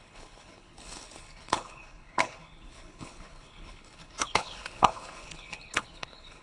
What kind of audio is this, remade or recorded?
remade